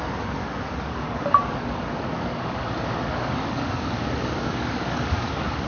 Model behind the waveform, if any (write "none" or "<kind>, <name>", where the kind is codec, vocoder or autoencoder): codec, DAC